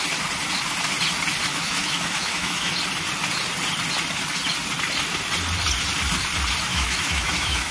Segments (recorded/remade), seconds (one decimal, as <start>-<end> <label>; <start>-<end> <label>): 0.0-1.5 recorded; 1.5-2.7 remade; 2.7-6.7 recorded; 6.7-7.7 remade